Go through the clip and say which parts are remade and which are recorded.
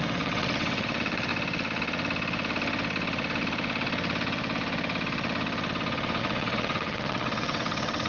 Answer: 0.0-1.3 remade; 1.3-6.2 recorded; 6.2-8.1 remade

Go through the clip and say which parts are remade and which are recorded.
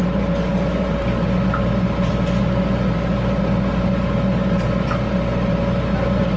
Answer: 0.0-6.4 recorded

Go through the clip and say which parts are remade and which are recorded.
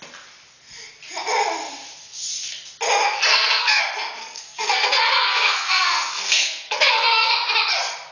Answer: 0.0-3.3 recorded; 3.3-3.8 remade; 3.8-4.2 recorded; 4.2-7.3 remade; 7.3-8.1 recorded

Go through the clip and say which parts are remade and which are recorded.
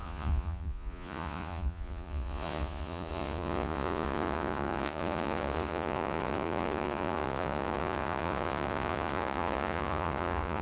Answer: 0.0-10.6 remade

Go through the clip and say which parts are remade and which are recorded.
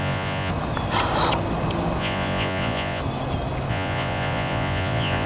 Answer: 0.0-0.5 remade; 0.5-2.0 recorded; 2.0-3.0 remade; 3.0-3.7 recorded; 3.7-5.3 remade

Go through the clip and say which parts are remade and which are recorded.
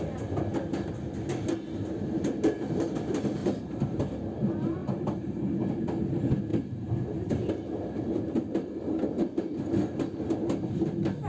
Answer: 0.0-3.4 recorded; 3.4-4.1 remade; 4.1-4.8 recorded; 4.8-5.4 remade; 5.4-6.5 recorded; 6.5-7.5 remade; 7.5-11.3 recorded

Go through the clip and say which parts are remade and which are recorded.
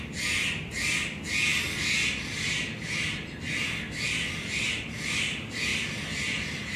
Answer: 0.0-6.8 recorded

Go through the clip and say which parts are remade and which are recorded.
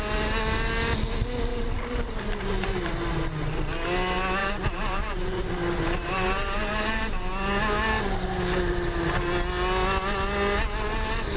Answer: 0.0-1.5 recorded; 1.5-2.9 remade; 2.9-4.4 recorded; 4.4-7.3 remade; 7.3-11.4 recorded